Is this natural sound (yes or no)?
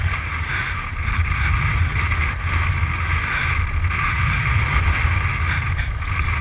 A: yes